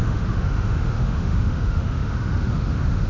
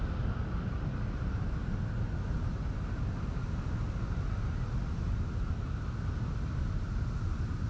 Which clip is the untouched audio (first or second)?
second